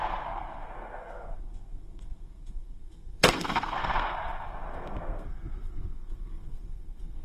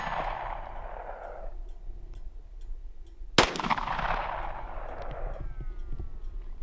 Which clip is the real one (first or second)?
second